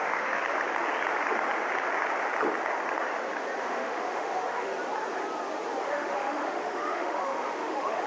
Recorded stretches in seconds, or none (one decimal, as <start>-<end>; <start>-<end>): 0.4-3.6; 4.7-5.8